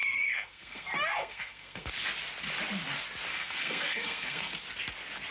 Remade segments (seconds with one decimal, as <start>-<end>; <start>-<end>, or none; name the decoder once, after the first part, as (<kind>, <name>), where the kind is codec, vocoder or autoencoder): 0.0-1.9 (codec, SNAC); 3.3-4.5